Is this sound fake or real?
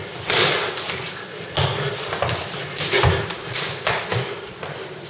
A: real